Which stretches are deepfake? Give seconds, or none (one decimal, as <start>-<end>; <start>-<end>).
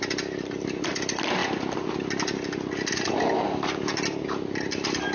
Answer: none